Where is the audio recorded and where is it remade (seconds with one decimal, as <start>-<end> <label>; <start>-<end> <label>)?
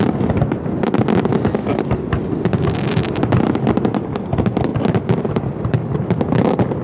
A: 0.0-6.8 recorded